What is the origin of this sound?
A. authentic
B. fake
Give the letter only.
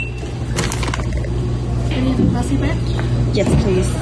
A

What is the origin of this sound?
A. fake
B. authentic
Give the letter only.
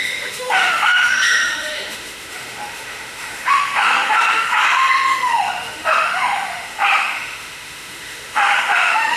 A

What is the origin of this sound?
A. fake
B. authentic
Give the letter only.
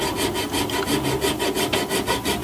B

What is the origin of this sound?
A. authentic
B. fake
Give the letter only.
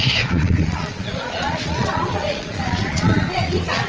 B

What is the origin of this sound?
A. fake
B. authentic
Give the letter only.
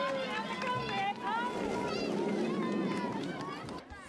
B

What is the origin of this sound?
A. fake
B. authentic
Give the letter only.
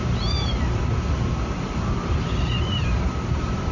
A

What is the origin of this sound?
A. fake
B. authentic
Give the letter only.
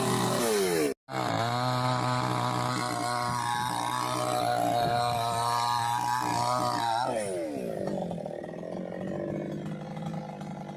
B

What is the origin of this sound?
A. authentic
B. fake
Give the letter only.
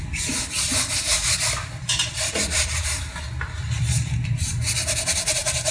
B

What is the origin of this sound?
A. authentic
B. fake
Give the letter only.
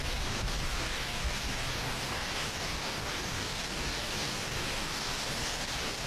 B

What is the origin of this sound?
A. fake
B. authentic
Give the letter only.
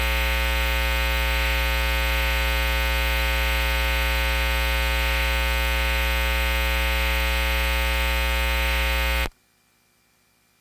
B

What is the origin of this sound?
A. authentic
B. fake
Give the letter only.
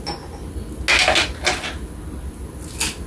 A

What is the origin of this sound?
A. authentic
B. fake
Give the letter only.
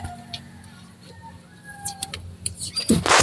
A